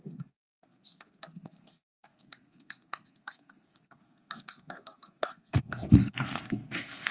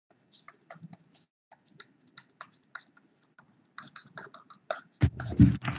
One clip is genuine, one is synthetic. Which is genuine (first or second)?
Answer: second